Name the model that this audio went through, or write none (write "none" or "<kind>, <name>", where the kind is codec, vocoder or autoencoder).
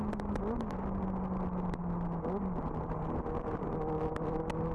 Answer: none